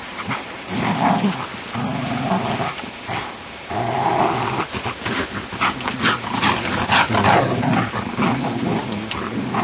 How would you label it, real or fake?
real